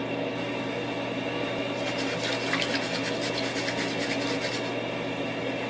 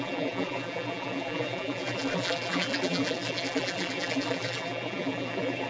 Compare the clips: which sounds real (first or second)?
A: first